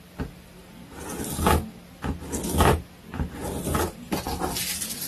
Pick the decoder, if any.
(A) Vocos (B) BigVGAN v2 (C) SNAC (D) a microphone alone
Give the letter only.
D